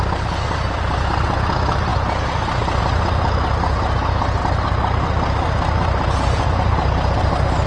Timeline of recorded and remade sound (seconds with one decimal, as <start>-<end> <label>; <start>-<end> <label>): 0.0-7.7 recorded